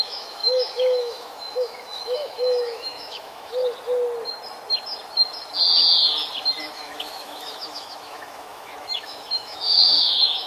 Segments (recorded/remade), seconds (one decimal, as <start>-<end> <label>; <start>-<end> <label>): 0.0-3.6 remade; 3.6-6.6 recorded; 6.6-10.5 remade